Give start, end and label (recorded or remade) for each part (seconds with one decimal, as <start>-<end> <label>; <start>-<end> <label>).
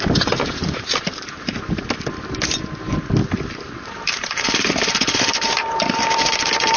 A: 0.0-0.6 recorded; 0.6-1.6 remade; 1.6-3.2 recorded; 3.2-6.8 remade